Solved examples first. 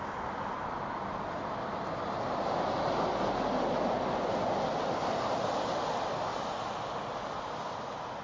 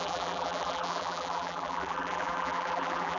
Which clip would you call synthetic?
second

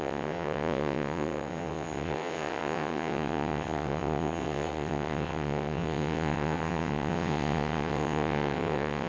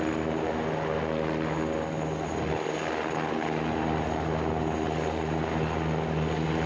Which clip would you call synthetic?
first